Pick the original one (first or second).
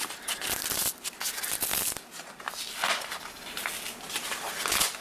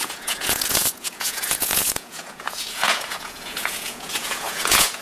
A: first